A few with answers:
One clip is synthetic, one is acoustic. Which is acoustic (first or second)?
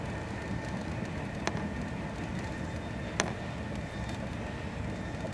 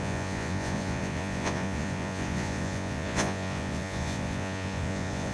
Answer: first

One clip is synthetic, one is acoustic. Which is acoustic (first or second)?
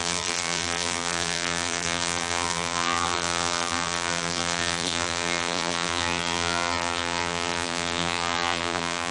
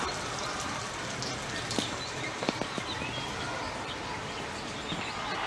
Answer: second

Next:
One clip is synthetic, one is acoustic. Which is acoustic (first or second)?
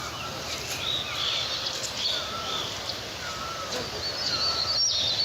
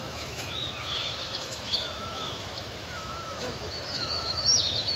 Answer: first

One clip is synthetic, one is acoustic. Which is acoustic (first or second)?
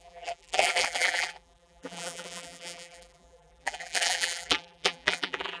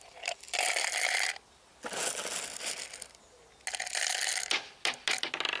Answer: second